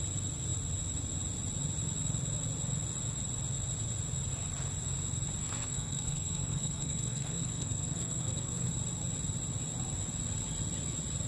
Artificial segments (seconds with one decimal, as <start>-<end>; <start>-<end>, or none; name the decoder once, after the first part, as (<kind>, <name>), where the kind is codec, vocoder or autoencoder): 5.4-8.7 (codec, SNAC)